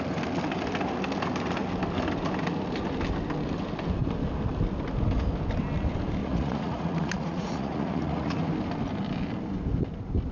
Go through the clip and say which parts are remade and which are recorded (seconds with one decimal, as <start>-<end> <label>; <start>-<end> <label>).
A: 0.0-6.2 recorded; 6.2-8.4 remade; 8.4-10.3 recorded